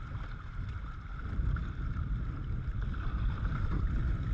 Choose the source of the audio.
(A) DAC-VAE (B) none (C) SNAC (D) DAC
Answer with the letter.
B